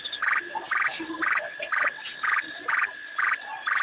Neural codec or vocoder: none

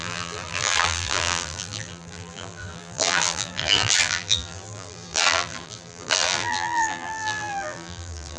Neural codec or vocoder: vocoder, BigVGAN v2